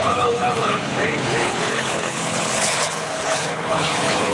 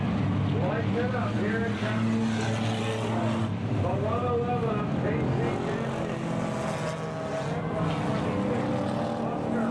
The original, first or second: second